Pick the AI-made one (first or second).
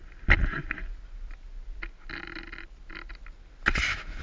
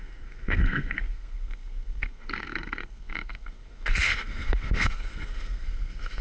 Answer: second